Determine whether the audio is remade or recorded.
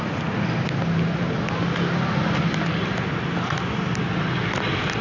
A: recorded